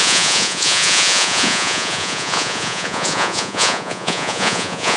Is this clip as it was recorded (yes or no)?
no